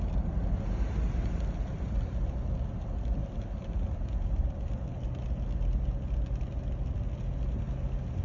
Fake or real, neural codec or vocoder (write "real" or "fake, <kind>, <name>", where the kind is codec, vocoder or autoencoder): real